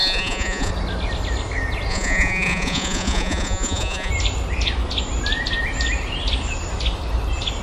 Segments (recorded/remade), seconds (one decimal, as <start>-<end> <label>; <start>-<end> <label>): 0.0-0.7 remade; 0.7-1.9 recorded; 1.9-4.1 remade; 4.1-7.6 recorded

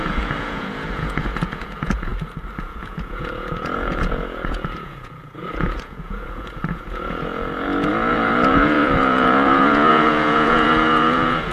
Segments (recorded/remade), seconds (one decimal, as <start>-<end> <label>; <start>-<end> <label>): 0.0-2.1 remade; 2.1-2.6 recorded; 2.6-11.5 remade